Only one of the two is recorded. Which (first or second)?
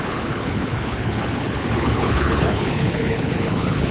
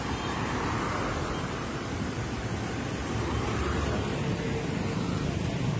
second